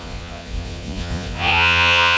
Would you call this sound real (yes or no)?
no